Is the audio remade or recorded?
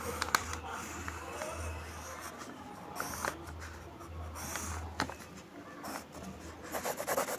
recorded